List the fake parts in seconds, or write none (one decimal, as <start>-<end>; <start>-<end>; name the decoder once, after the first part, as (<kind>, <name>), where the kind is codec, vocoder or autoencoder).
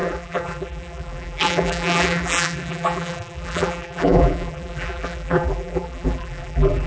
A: 0.0-6.9 (vocoder, BigVGAN v2)